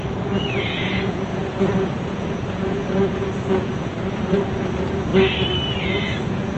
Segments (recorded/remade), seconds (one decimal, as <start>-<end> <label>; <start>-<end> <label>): 0.0-5.1 remade; 5.1-5.8 recorded; 5.8-6.6 remade

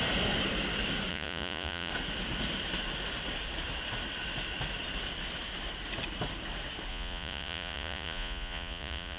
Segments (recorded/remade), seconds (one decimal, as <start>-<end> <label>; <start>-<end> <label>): 0.0-1.1 recorded; 1.1-1.9 remade; 1.9-6.9 recorded; 6.9-9.2 remade

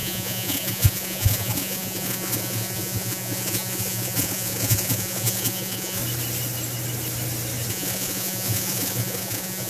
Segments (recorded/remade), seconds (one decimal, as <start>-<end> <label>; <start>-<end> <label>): 0.0-6.0 remade; 6.0-7.7 recorded; 7.7-9.7 remade

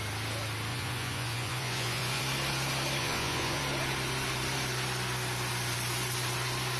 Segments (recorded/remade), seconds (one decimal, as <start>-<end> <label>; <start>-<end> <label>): 0.0-0.7 recorded; 0.7-2.2 remade; 2.2-3.0 recorded; 3.0-3.6 remade; 3.6-6.8 recorded